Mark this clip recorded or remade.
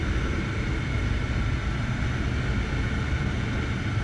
recorded